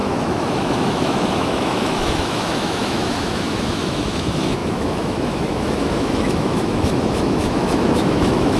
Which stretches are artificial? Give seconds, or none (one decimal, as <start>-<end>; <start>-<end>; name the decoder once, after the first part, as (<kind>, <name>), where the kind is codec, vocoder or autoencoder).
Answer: 0.0-8.6 (autoencoder, DAC-VAE)